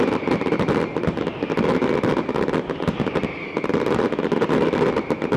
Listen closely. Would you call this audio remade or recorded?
recorded